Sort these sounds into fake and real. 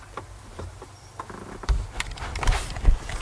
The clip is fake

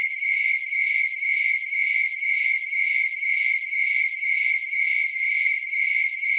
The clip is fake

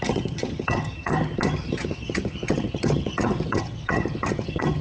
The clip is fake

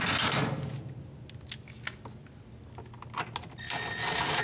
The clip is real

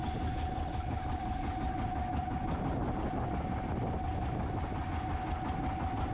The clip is real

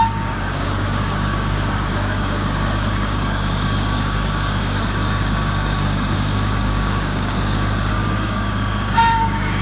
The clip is fake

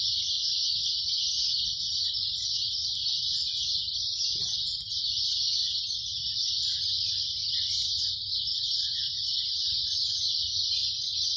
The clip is real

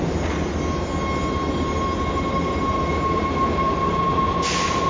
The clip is real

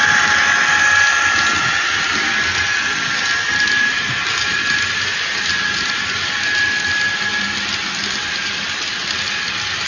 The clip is real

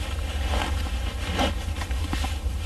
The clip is real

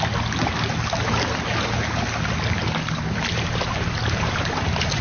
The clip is real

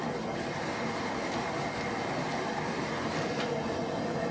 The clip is fake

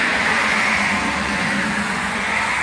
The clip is fake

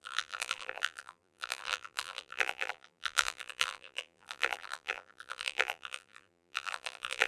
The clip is fake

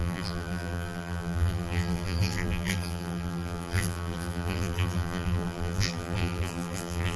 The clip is fake